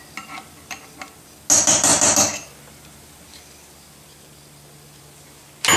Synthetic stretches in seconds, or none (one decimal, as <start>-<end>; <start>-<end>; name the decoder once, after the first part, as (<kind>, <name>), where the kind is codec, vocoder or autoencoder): none